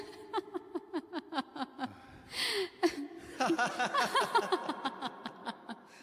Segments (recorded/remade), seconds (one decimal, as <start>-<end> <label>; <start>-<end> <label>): 0.0-5.4 recorded; 5.4-6.0 remade